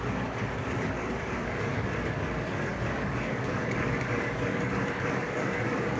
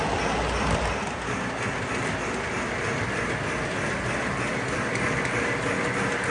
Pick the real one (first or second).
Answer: second